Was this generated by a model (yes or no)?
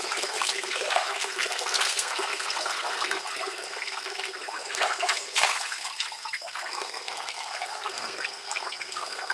yes